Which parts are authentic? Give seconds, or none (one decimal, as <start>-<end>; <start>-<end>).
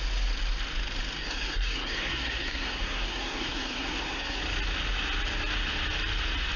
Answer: 0.0-1.2; 4.4-6.6